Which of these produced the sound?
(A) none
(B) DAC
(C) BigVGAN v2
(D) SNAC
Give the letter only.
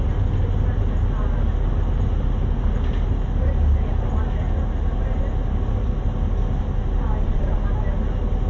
A